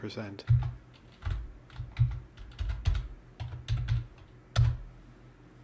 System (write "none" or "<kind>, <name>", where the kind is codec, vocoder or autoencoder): none